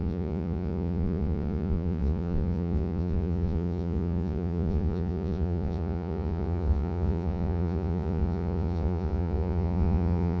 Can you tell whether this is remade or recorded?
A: remade